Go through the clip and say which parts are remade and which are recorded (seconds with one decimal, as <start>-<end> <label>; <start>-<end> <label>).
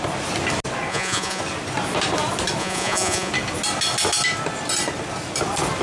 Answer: 0.0-0.9 recorded; 0.9-1.4 remade; 1.4-2.6 recorded; 2.6-3.3 remade; 3.3-5.8 recorded